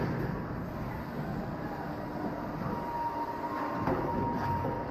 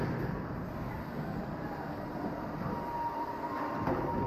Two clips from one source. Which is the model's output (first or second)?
second